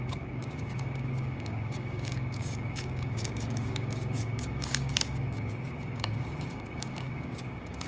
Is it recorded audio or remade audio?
remade